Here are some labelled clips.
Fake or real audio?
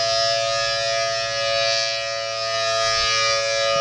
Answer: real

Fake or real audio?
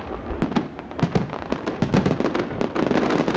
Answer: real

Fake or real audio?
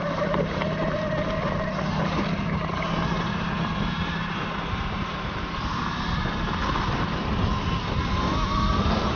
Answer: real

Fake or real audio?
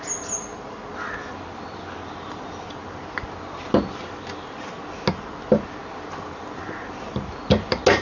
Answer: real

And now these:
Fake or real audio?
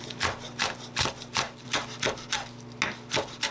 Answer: real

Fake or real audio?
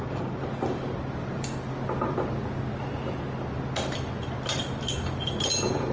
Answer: real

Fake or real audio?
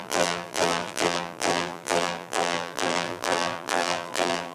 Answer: fake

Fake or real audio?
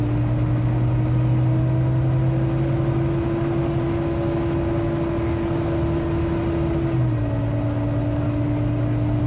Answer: real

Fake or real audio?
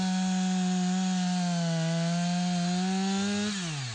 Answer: real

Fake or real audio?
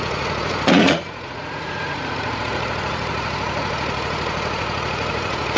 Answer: fake